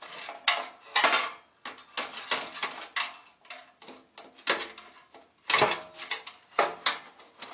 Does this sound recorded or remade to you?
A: recorded